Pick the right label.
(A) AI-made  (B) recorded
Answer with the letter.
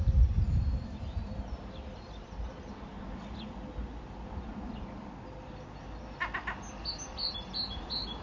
B